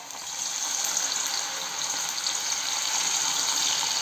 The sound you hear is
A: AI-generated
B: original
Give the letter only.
B